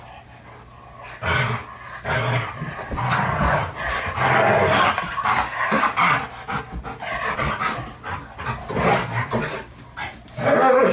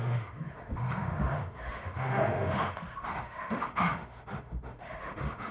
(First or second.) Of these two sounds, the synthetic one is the second